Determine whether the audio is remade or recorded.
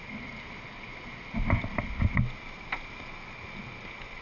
recorded